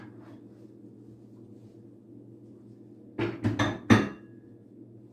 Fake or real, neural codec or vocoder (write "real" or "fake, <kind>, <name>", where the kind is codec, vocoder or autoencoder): real